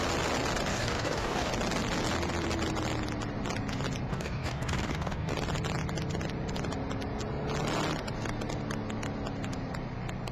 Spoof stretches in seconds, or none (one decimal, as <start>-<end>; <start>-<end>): 0.7-1.5; 4.1-5.3